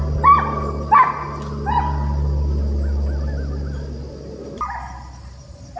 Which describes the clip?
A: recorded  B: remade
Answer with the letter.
A